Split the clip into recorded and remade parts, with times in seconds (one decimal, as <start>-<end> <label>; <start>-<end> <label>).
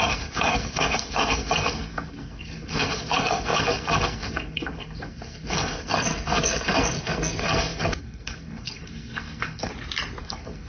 0.0-9.7 remade; 9.7-10.2 recorded; 10.2-10.7 remade